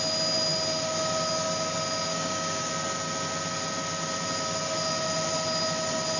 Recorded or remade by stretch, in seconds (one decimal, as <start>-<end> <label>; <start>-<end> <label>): 0.0-2.1 recorded; 2.1-2.7 remade; 2.7-6.2 recorded